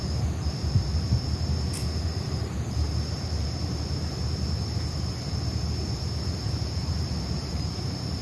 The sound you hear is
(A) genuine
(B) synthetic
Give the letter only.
B